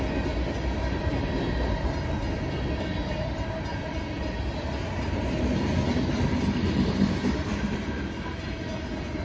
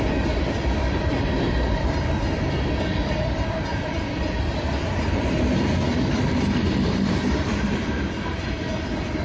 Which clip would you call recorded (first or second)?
first